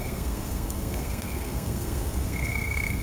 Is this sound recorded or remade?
remade